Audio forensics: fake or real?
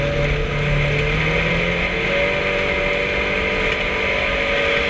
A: real